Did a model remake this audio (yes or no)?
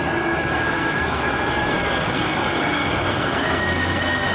yes